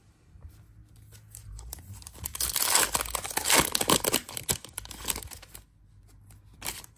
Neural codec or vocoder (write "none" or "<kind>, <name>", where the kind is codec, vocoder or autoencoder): none